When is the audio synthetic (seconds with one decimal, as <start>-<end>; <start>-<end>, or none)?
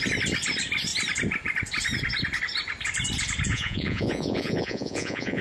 3.5-5.4